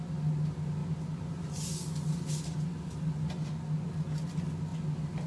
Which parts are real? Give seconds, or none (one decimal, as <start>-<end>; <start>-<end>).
0.0-5.3